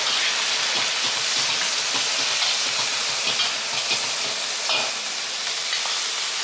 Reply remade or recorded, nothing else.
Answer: recorded